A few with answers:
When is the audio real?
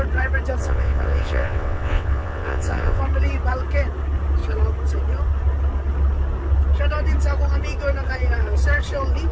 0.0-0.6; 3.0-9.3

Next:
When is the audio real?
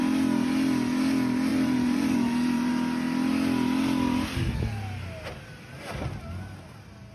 0.0-1.5; 2.7-7.1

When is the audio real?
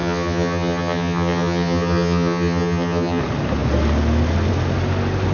3.2-5.3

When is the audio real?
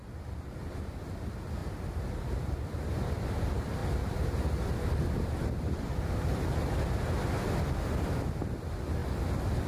0.7-1.6; 2.3-9.0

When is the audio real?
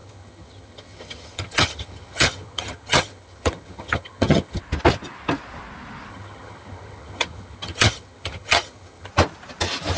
4.6-6.1; 9.1-10.0